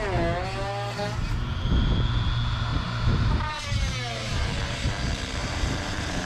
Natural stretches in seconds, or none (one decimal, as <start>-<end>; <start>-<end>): 0.0-2.7; 4.9-5.4